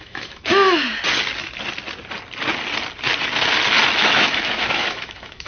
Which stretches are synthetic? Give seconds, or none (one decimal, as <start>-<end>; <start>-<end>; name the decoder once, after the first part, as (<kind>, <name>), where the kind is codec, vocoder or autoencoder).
0.0-0.9 (autoencoder, DAC-VAE); 4.0-5.5